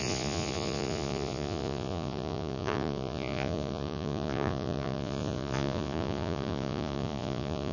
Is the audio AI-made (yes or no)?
yes